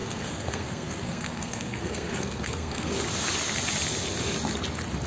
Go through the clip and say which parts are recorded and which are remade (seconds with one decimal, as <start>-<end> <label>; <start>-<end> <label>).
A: 0.0-3.0 remade; 3.0-5.1 recorded